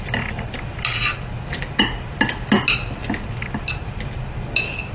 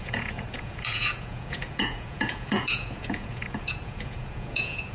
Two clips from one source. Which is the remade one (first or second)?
second